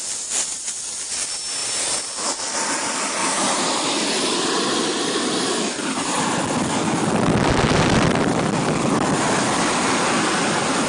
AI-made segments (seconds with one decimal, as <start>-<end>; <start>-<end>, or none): 1.6-2.1; 3.2-3.8

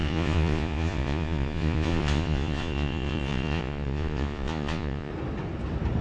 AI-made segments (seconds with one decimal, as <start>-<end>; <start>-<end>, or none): 0.0-5.1

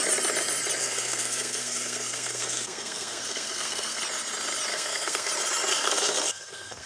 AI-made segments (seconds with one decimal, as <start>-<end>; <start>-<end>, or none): 0.8-4.0; 4.7-5.3; 5.7-6.9

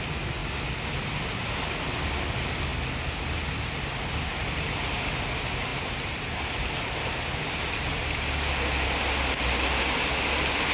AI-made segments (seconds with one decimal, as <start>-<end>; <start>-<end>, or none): 4.4-5.2

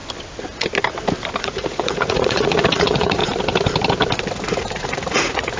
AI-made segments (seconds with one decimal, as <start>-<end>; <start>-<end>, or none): 1.4-3.2; 4.7-5.6

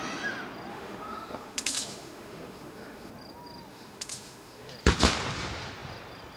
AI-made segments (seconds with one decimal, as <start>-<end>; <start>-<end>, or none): 0.7-3.1; 3.7-4.7